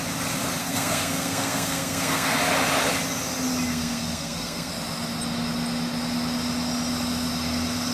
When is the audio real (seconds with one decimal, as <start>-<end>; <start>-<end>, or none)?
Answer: 0.0-0.6; 2.4-3.7; 4.7-7.9